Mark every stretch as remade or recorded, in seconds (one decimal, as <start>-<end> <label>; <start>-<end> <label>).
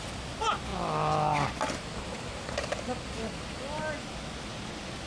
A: 0.0-5.1 recorded